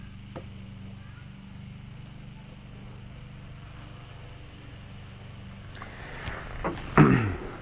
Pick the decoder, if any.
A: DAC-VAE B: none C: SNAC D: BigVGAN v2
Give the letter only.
B